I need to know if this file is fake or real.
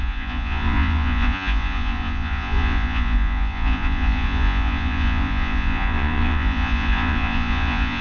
fake